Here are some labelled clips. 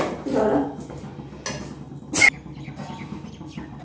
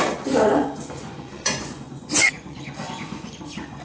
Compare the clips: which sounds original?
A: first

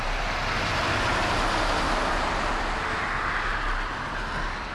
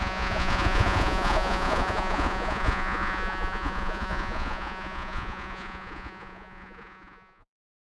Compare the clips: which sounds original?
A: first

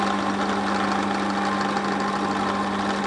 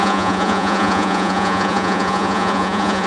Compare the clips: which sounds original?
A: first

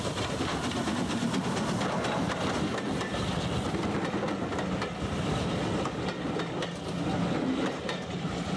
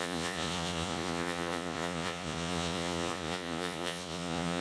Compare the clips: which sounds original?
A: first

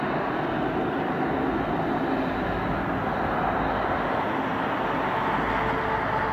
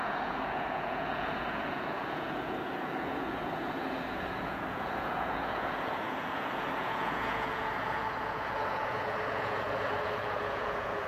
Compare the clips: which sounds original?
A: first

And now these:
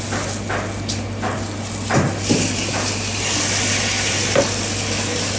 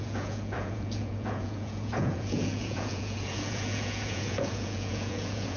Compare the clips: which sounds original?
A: first